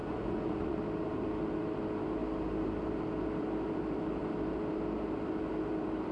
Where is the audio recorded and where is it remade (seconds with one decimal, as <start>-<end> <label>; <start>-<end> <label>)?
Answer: 0.0-0.8 remade; 0.8-6.1 recorded